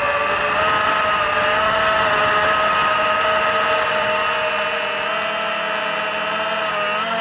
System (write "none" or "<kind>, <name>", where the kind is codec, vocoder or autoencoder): none